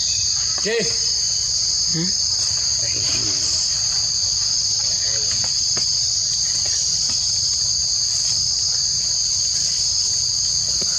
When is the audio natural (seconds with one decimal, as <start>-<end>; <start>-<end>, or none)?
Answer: 0.0-1.9; 5.6-7.8; 8.4-11.0